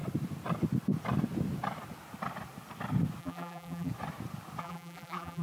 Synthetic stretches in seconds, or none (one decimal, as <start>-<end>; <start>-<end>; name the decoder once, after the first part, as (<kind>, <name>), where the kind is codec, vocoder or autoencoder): 3.2-3.9 (vocoder, BigVGAN v2); 4.6-5.4